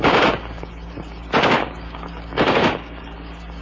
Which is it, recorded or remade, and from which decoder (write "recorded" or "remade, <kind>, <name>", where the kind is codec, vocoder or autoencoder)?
remade, codec, DAC